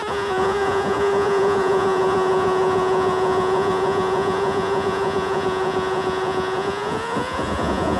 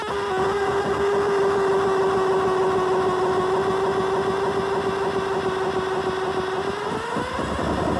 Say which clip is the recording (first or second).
second